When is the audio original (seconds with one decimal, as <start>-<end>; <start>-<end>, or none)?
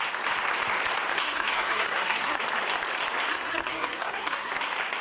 0.0-1.1; 2.4-3.3; 4.5-5.0